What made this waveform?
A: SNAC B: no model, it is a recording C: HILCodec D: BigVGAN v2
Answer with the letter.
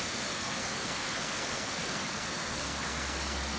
A